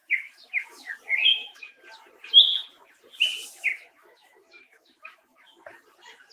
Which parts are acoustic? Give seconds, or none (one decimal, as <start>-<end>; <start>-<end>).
0.9-1.3; 1.8-3.7; 5.6-6.3